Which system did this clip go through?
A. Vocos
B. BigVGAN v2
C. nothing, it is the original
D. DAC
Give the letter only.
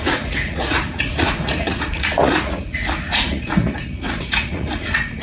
A